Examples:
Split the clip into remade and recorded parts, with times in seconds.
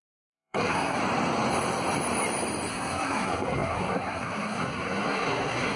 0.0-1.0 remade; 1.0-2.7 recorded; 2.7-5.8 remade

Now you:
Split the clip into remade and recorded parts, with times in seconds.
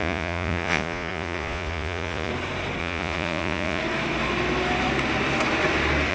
0.0-2.3 remade; 2.3-2.8 recorded; 2.8-3.8 remade; 3.8-6.1 recorded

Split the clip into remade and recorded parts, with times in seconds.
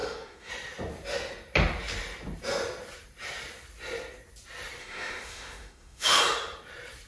0.0-0.5 remade; 0.5-4.8 recorded; 4.8-6.2 remade; 6.2-7.1 recorded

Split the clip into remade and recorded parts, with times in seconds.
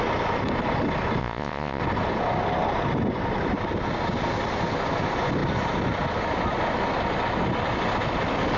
0.0-1.2 recorded; 1.2-1.8 remade; 1.8-8.6 recorded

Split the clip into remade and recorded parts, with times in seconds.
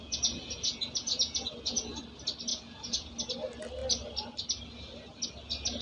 0.0-2.0 remade; 2.0-2.5 recorded; 2.5-3.1 remade; 3.1-5.8 recorded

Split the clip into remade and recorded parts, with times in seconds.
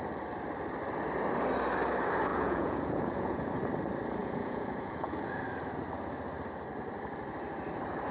0.0-2.3 recorded; 2.3-3.5 remade; 3.5-4.2 recorded; 4.2-5.4 remade; 5.4-8.1 recorded